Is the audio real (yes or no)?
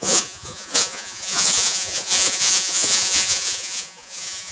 no